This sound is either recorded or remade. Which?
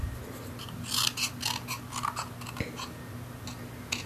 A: recorded